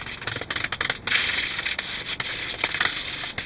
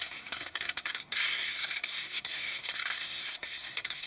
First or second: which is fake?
second